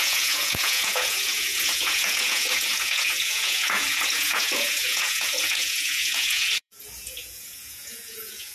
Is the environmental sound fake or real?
fake